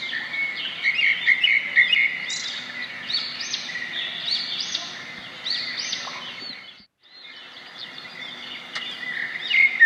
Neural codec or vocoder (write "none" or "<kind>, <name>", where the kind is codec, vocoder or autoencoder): none